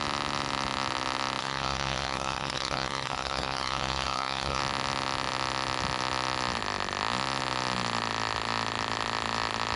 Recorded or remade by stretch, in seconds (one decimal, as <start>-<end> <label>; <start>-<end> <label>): 0.0-1.4 recorded; 1.4-4.6 remade; 4.6-9.8 recorded